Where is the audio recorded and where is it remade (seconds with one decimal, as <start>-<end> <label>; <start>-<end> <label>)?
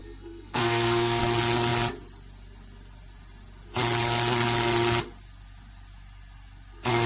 0.0-1.2 remade; 1.2-7.1 recorded